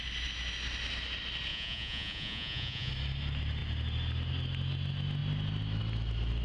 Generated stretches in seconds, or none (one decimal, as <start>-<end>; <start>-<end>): 1.5-2.9